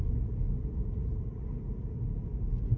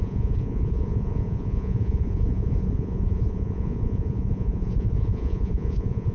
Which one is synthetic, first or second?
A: second